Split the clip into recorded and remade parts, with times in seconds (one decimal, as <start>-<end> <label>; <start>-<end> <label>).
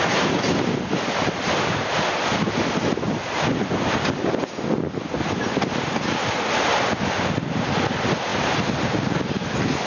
0.0-9.9 recorded